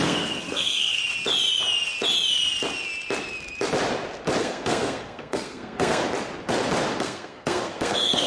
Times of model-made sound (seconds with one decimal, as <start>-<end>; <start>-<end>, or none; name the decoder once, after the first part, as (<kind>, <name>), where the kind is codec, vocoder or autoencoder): 0.0-1.0 (codec, SNAC); 4.4-6.0; 7.0-8.3